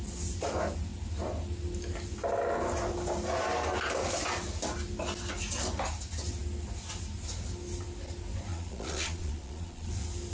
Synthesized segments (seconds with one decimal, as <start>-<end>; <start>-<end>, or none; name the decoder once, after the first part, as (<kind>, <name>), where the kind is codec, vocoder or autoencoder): 8.5-9.9 (vocoder, Vocos)